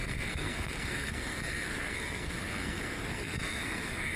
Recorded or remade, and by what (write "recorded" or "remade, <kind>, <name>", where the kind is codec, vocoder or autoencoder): remade, codec, SNAC